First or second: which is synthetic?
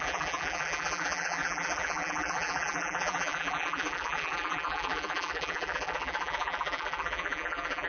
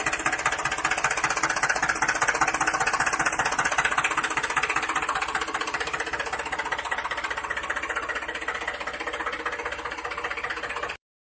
first